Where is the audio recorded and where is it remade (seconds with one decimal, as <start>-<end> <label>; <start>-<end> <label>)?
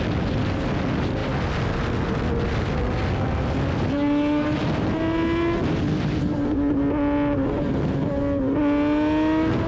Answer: 0.0-9.7 recorded